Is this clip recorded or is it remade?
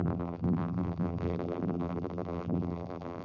remade